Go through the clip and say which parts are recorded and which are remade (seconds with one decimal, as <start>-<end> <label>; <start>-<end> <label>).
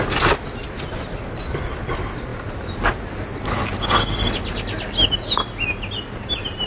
0.0-6.7 recorded